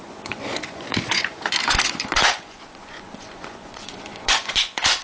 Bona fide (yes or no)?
no